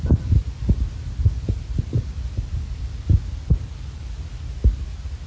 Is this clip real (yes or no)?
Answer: yes